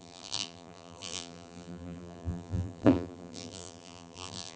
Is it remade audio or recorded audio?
remade